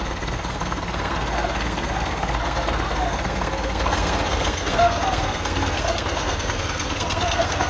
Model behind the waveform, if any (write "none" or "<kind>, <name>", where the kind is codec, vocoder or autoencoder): codec, SNAC